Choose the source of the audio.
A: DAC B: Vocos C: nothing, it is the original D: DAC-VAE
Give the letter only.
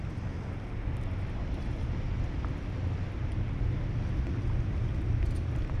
C